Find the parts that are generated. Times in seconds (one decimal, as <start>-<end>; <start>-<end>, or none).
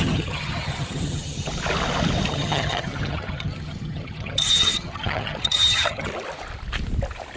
0.0-1.5; 2.3-6.1